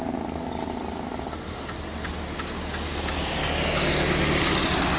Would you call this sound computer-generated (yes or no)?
no